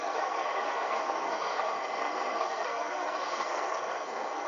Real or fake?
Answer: fake